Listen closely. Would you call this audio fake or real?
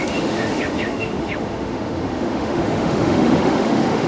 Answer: fake